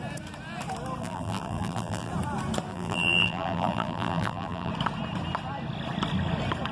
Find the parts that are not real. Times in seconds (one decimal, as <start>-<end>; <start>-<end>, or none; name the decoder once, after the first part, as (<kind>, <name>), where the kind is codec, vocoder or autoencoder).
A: 1.0-2.1 (vocoder, BigVGAN v2); 2.7-4.7